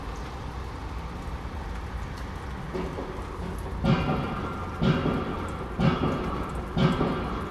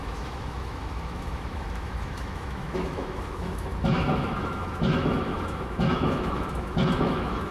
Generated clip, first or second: second